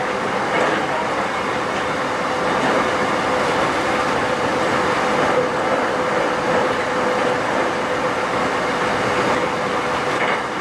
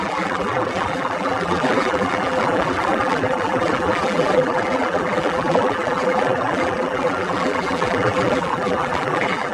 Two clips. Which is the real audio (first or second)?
first